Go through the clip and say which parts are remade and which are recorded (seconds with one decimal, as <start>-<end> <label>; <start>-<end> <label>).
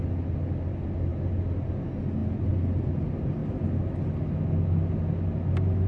0.0-2.2 recorded; 2.2-2.9 remade; 2.9-5.9 recorded